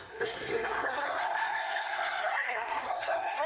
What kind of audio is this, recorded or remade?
remade